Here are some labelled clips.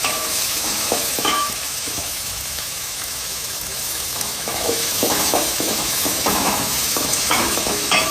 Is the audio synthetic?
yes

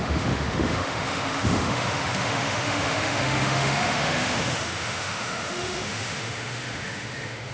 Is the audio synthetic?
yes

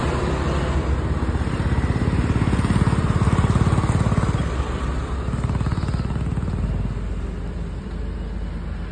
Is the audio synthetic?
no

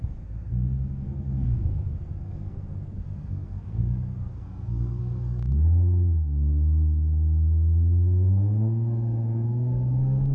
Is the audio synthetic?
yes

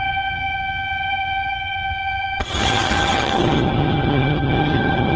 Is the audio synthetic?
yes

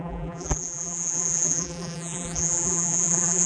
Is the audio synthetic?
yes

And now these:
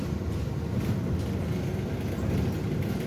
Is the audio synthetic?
no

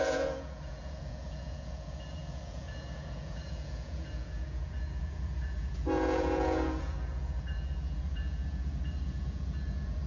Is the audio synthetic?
yes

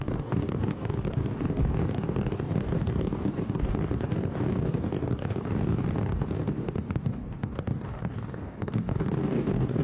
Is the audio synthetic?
yes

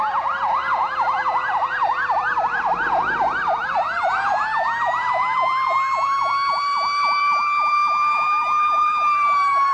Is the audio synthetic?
yes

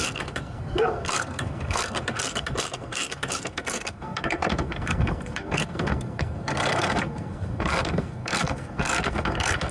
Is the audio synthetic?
yes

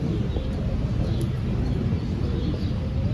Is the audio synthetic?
no